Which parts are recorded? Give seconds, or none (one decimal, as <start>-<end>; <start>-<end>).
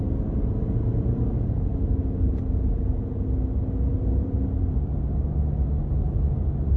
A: 0.0-6.8